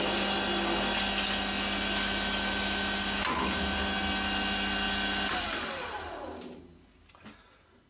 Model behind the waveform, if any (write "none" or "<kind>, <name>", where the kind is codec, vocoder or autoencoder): none